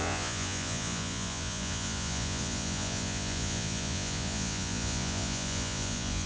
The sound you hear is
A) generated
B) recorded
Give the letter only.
A